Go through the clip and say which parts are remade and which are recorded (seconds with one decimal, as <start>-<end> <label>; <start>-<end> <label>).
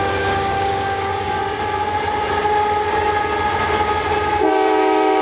0.0-1.4 remade; 1.4-4.5 recorded; 4.5-5.2 remade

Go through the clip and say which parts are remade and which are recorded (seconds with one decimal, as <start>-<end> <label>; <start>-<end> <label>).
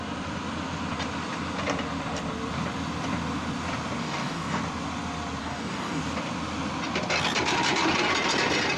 0.0-4.0 recorded; 4.0-4.6 remade; 4.6-5.4 recorded; 5.4-6.0 remade; 6.0-8.8 recorded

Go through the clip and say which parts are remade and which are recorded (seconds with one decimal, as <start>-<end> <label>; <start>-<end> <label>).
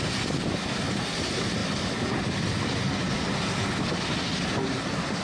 0.0-5.2 recorded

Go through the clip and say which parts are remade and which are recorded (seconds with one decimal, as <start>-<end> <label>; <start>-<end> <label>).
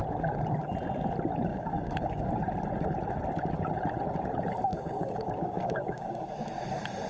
0.0-1.5 recorded; 1.5-2.3 remade; 2.3-4.7 recorded; 4.7-6.1 remade; 6.1-7.1 recorded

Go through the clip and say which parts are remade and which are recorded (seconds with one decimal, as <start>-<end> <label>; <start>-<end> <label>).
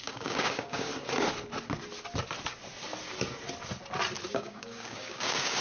0.0-0.9 remade; 0.9-4.3 recorded; 4.3-5.6 remade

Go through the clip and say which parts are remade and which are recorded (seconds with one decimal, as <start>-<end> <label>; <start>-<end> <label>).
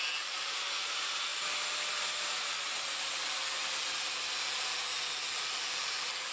0.0-6.3 recorded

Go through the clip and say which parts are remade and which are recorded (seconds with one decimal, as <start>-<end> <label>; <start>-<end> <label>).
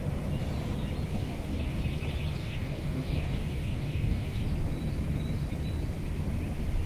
0.0-1.1 recorded; 1.1-1.8 remade; 1.8-2.4 recorded; 2.4-4.4 remade; 4.4-6.9 recorded